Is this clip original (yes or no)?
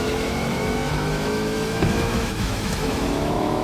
no